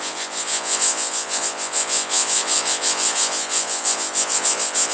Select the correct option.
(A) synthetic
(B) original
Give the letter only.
A